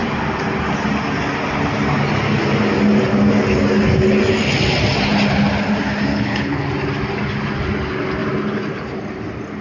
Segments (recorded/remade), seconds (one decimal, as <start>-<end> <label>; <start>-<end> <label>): 0.0-6.1 recorded; 6.1-6.7 remade; 6.7-9.6 recorded